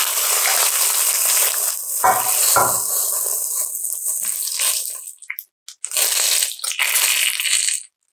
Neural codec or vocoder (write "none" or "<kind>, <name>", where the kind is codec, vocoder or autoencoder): none